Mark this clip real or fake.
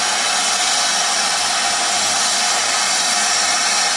real